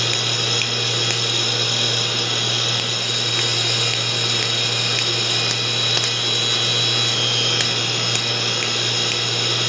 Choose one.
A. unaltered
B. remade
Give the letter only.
A